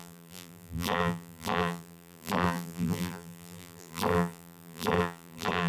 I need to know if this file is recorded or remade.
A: remade